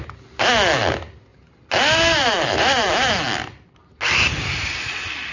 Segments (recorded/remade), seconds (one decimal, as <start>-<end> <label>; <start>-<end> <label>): 0.0-1.3 recorded; 1.3-3.1 remade; 3.1-5.3 recorded